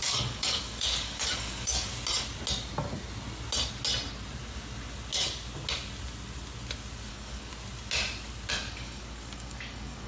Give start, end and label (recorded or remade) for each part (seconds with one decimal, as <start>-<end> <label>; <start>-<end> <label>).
0.0-1.9 remade; 1.9-7.1 recorded; 7.1-7.5 remade; 7.5-8.5 recorded; 8.5-10.1 remade